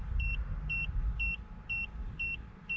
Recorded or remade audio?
recorded